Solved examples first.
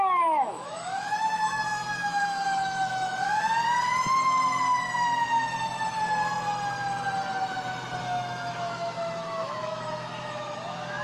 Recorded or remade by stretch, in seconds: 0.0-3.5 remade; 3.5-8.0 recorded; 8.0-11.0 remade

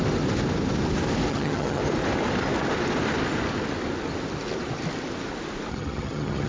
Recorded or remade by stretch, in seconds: 0.0-1.3 recorded; 1.3-1.8 remade; 1.8-5.7 recorded; 5.7-6.5 remade

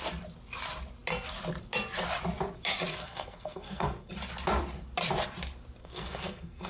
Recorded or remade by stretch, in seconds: 0.0-2.9 recorded; 2.9-4.1 remade; 4.1-5.8 recorded; 5.8-6.7 remade

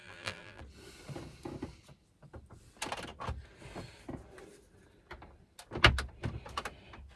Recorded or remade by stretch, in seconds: 0.0-0.6 remade; 0.6-7.2 recorded

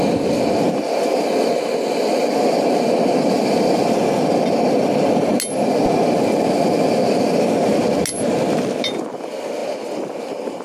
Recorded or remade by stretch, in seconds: 0.0-10.6 recorded

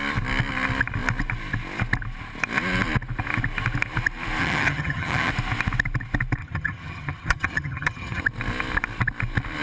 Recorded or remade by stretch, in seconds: 0.0-4.4 recorded; 4.4-5.3 remade; 5.3-6.4 recorded; 6.4-8.2 remade; 8.2-9.6 recorded

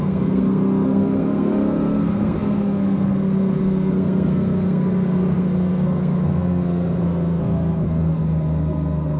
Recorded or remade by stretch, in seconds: 0.0-9.2 remade